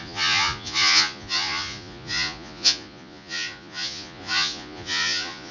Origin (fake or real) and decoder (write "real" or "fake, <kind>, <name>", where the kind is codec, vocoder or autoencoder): fake, vocoder, Vocos